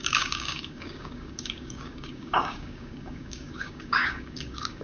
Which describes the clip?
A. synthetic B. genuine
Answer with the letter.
A